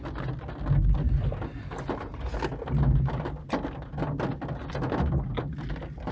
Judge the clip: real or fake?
real